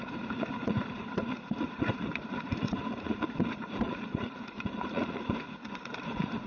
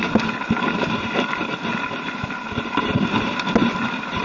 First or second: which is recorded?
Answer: second